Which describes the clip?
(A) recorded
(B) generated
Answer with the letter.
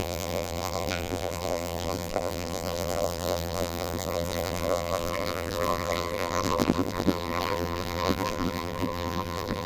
B